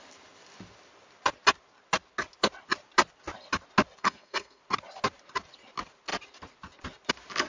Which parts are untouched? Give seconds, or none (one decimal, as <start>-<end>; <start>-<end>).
0.0-4.0; 4.6-7.5